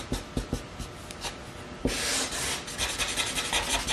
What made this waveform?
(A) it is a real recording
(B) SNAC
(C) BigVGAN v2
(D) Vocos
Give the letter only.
A